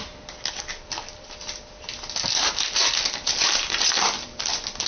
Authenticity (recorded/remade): recorded